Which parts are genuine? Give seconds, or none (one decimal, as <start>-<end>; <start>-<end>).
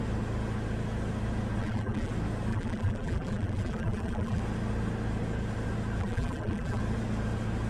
0.0-1.6; 2.1-2.5; 4.4-6.0; 6.8-7.7